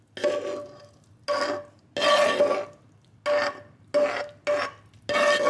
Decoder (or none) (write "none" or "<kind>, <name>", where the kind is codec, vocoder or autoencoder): none